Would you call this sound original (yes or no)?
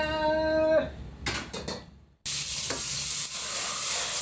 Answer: yes